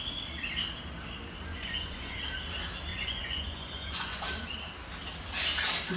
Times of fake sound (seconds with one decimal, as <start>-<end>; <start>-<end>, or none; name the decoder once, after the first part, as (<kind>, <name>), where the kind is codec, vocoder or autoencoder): 1.5-2.2 (vocoder, Vocos); 2.9-4.2